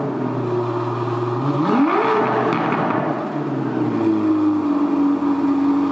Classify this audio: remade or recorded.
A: recorded